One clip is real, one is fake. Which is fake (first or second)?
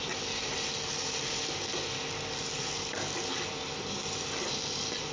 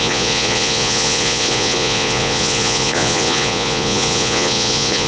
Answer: second